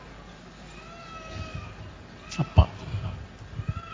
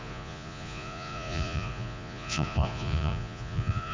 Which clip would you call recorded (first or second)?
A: first